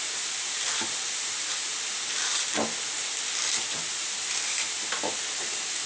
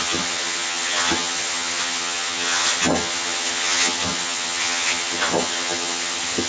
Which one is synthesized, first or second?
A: second